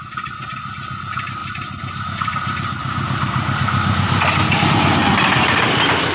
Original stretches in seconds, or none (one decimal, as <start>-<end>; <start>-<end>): 0.0-6.1